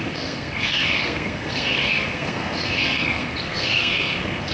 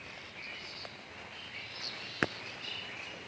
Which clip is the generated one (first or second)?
first